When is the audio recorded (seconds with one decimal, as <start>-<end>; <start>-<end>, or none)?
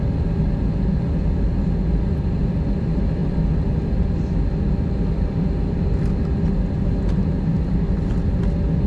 0.0-8.9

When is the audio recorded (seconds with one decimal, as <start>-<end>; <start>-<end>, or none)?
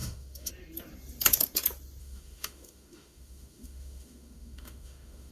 0.5-2.0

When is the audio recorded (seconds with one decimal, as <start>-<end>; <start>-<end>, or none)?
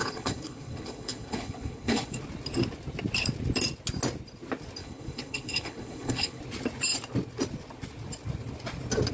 2.2-4.8; 6.4-9.1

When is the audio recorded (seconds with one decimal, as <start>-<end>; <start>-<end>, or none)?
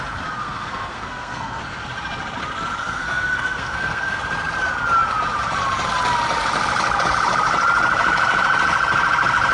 0.0-0.4; 1.6-2.8; 4.2-9.5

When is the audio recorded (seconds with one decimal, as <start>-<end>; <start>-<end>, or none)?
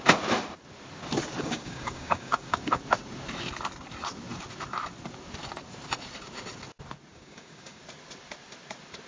0.0-1.4; 2.8-7.1; 7.8-9.1